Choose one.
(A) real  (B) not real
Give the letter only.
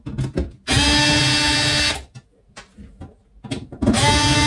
A